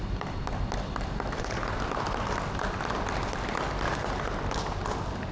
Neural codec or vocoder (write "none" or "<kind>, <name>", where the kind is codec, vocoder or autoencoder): none